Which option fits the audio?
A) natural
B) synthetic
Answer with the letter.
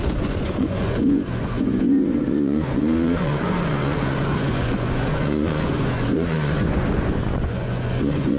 B